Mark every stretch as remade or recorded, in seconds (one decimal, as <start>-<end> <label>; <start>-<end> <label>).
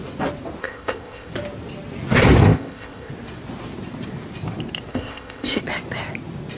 0.0-0.6 recorded; 0.6-1.3 remade; 1.3-2.4 recorded; 2.4-3.1 remade; 3.1-4.9 recorded; 4.9-5.6 remade; 5.6-6.6 recorded